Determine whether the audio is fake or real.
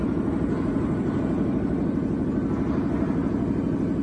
real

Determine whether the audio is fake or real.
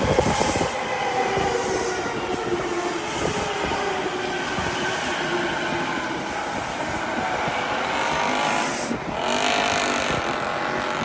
real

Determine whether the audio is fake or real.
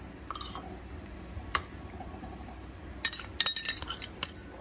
real